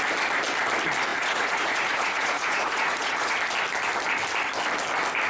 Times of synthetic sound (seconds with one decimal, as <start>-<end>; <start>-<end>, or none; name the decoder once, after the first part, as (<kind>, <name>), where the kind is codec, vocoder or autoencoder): 1.1-3.3 (vocoder, Vocos)